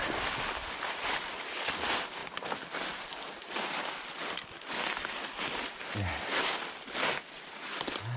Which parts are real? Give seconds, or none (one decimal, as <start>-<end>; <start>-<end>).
0.0-8.2